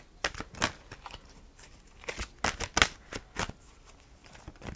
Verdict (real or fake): real